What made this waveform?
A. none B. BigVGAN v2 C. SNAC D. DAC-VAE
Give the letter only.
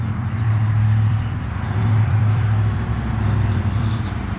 B